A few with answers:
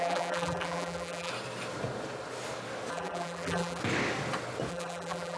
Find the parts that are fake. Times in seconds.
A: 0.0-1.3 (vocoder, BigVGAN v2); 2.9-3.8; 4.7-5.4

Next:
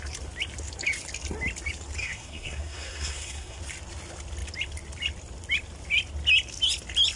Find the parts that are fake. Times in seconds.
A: 2.0-3.6 (codec, SNAC)

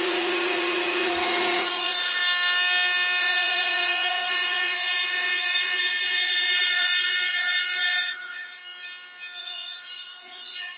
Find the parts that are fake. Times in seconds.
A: 0.0-2.2 (vocoder, Vocos); 3.2-8.6; 9.4-10.8